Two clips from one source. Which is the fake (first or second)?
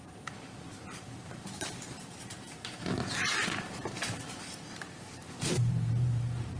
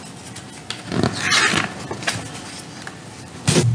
first